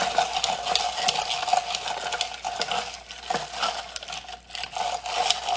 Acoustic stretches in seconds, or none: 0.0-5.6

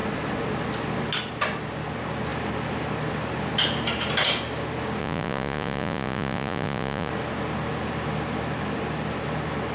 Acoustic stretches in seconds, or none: 0.0-5.0; 7.1-9.7

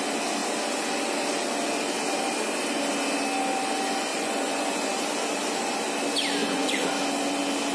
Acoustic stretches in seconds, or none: 0.0-4.1; 5.1-6.4; 6.9-7.7

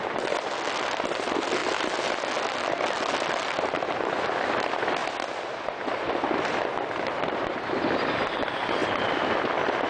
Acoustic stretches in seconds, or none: 0.0-9.9

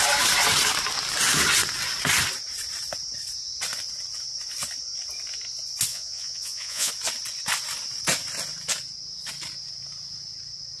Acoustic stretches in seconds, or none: 0.0-5.9; 6.9-10.8

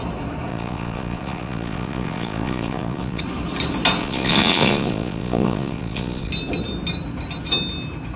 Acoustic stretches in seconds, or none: 0.0-0.5; 3.2-4.0; 6.3-8.2

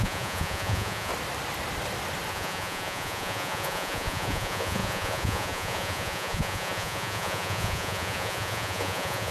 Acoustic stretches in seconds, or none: 1.1-2.3